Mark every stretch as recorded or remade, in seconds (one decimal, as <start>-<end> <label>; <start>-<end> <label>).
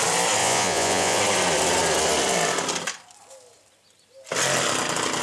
0.0-0.4 recorded; 0.4-1.2 remade; 1.2-5.2 recorded